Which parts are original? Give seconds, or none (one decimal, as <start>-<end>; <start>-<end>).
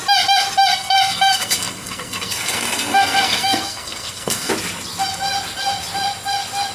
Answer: 0.0-0.7; 4.5-6.7